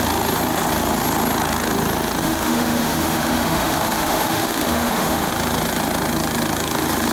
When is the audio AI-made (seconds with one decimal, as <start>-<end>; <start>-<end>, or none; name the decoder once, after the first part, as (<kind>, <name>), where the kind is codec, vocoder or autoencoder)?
2.2-5.3 (autoencoder, DAC-VAE)